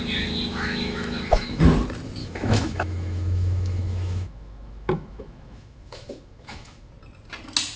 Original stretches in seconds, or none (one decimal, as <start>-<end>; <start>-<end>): 0.0-0.5; 1.6-2.2; 6.9-7.8